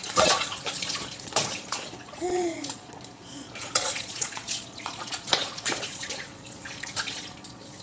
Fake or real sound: fake